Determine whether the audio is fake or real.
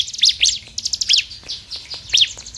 real